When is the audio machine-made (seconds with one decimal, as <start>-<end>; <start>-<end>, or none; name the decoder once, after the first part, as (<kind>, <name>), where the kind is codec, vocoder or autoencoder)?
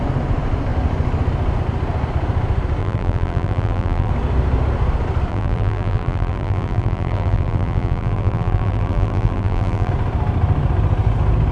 2.8-4.1 (vocoder, BigVGAN v2); 5.3-9.9